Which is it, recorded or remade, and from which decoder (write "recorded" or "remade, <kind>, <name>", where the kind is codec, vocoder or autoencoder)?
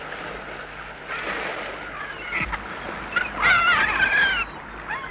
recorded